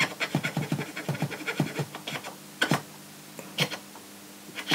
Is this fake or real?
real